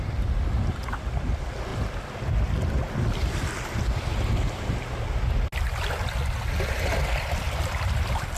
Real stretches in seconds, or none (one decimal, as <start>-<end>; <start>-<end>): 0.0-8.4